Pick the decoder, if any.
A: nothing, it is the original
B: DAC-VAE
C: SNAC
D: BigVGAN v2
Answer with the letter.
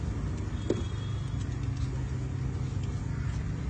A